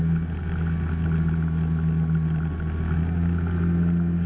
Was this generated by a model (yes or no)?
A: no